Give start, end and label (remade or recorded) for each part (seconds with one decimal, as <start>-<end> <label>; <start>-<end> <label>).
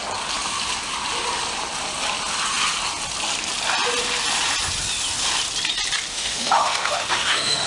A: 0.0-6.1 recorded; 6.1-7.7 remade